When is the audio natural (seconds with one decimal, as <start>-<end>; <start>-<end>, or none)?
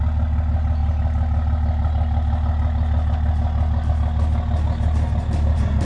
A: 0.0-5.8